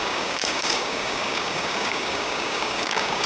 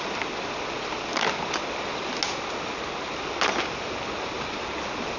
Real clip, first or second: second